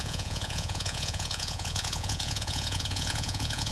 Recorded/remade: remade